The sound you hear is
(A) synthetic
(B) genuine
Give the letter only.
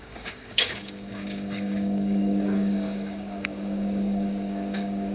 A